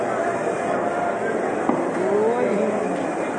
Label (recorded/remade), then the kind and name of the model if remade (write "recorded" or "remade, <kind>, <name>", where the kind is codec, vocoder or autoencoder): recorded